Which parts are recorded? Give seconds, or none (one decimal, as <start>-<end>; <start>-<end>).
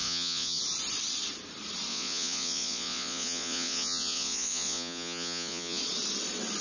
0.6-1.9; 5.8-6.6